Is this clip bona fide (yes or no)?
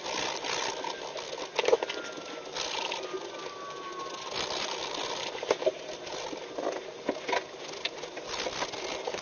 yes